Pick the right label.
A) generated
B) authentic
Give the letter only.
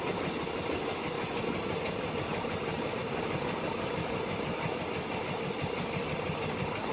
B